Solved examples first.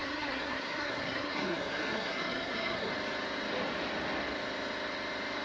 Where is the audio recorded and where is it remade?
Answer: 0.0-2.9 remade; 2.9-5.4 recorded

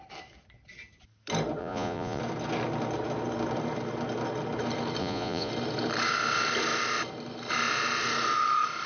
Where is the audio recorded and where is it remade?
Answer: 0.0-1.6 recorded; 1.6-2.2 remade; 2.2-5.0 recorded; 5.0-5.5 remade; 5.5-8.9 recorded

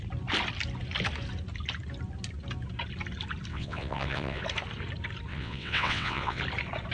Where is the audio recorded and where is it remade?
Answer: 0.0-3.5 recorded; 3.5-4.4 remade; 4.4-5.3 recorded; 5.3-6.4 remade; 6.4-6.9 recorded

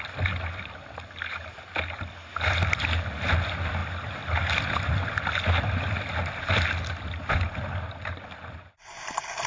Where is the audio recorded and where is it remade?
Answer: 0.0-9.5 recorded

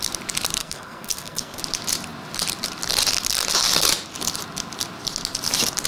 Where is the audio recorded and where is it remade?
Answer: 0.0-0.6 recorded; 0.6-1.6 remade; 1.6-5.9 recorded

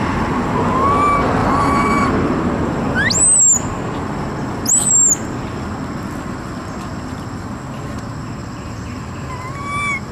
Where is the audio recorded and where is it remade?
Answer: 0.0-1.4 recorded; 1.4-2.1 remade; 2.1-8.4 recorded; 8.4-10.1 remade